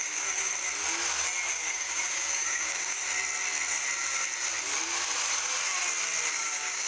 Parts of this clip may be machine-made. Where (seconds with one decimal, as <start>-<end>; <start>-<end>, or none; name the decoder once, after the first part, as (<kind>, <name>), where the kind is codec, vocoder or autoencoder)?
0.0-0.5 (codec, DAC); 1.5-3.0; 6.3-6.9